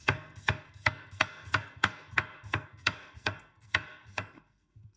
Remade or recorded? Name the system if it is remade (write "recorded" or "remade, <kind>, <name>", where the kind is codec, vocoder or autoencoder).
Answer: remade, codec, SNAC